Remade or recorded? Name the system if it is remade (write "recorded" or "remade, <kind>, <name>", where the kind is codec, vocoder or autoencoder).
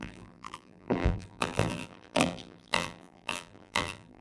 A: remade, vocoder, BigVGAN v2